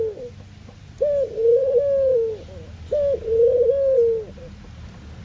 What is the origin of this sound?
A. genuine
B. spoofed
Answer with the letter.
A